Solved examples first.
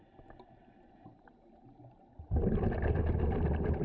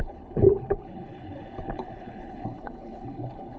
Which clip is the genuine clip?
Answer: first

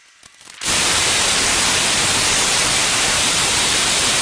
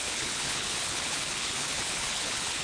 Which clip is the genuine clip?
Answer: first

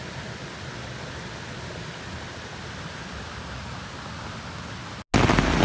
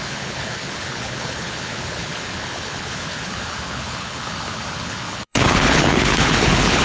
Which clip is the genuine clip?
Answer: first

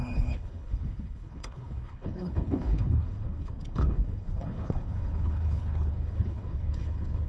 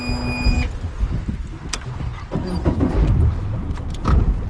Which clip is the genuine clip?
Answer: second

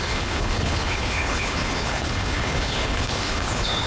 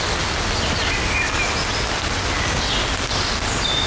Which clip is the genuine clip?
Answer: second